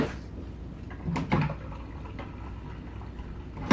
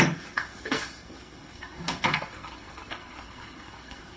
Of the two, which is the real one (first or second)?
first